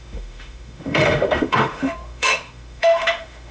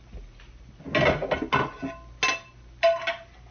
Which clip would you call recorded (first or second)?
second